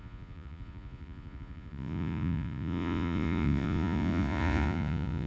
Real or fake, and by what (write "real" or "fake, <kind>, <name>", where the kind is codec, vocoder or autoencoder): fake, vocoder, Vocos